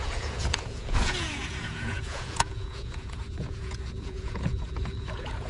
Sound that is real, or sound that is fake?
fake